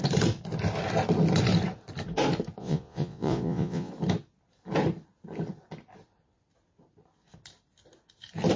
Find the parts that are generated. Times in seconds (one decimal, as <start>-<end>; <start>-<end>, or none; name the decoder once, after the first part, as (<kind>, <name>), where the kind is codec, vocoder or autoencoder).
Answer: 2.6-3.9 (vocoder, Vocos)